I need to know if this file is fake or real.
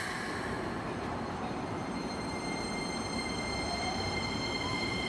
fake